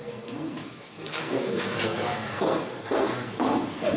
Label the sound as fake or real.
fake